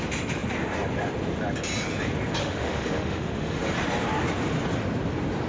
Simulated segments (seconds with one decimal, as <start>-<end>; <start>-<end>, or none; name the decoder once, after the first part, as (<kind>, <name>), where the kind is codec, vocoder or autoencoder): 2.4-3.6 (autoencoder, DAC-VAE)